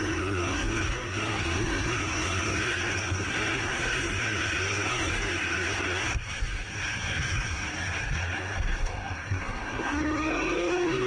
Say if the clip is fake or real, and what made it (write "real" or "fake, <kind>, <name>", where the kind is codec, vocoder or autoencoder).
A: fake, codec, SNAC